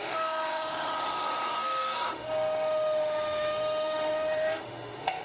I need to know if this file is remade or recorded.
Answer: remade